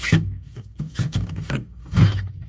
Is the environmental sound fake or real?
fake